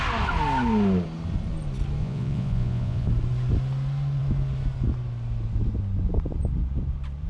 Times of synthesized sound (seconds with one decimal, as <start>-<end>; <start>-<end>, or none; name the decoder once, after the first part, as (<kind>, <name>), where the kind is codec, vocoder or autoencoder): 2.0-3.1 (vocoder, Vocos)